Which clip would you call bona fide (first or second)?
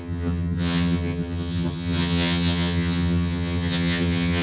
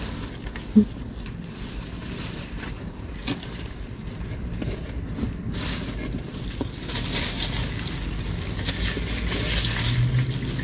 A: second